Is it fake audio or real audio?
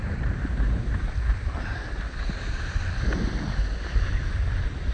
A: real